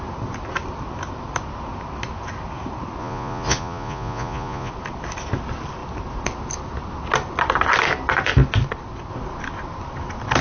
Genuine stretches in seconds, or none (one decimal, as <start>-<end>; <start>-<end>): 0.0-3.0; 4.7-10.4